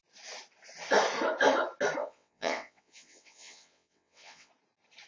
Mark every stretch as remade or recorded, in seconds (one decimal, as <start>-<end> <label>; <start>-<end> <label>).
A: 0.0-2.0 recorded; 2.0-4.5 remade; 4.5-5.1 recorded